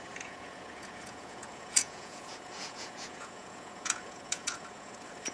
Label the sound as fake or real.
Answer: fake